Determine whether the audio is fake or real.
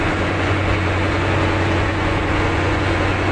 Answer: fake